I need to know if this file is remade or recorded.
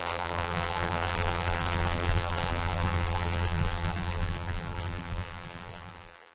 remade